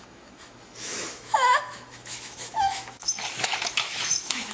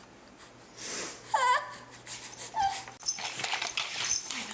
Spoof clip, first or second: first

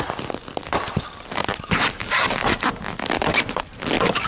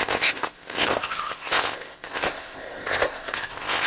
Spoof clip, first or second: second